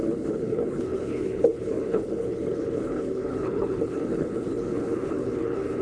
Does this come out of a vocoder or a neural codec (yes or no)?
yes